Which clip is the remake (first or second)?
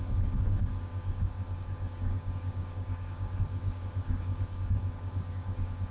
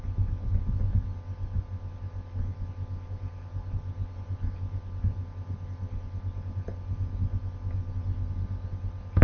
first